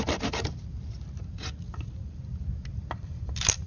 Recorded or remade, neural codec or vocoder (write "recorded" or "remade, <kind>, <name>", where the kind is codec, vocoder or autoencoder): recorded